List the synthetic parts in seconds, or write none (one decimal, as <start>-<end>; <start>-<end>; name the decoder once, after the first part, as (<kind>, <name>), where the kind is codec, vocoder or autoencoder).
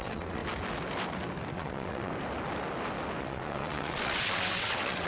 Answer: 0.0-0.4 (vocoder, WaveNeXt); 1.5-2.1; 3.2-5.1